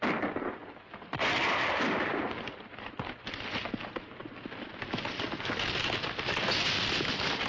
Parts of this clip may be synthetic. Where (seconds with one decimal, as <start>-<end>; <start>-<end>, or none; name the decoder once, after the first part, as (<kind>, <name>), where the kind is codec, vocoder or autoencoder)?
none